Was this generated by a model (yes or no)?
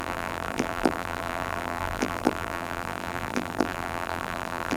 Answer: yes